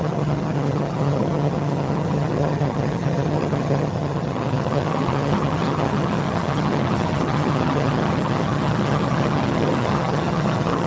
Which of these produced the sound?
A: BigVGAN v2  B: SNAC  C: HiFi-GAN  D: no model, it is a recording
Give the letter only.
C